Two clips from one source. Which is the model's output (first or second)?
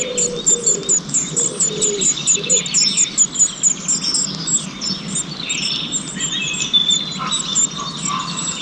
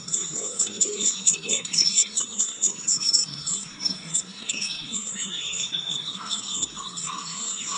second